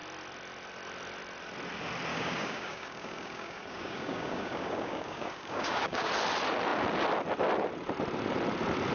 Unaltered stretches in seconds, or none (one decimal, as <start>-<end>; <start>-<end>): 0.0-2.1; 6.1-8.9